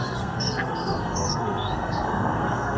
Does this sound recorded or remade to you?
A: remade